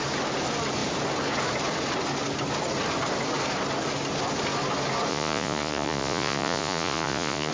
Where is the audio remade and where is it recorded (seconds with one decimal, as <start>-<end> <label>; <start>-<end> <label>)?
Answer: 0.0-5.1 recorded; 5.1-7.5 remade